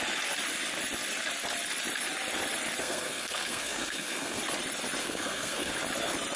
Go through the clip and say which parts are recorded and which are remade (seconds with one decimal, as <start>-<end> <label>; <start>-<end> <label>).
0.0-2.8 recorded; 2.8-4.4 remade; 4.4-5.0 recorded; 5.0-5.7 remade; 5.7-6.4 recorded